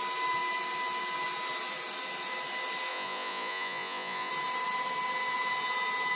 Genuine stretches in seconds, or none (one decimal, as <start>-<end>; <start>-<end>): 0.0-2.9; 4.3-6.2